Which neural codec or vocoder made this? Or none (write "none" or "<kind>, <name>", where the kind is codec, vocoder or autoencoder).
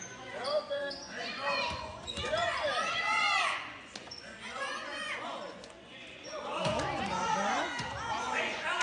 vocoder, Vocos